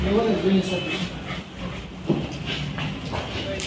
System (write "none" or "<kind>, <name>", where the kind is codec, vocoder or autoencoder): none